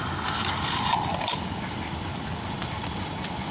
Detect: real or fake real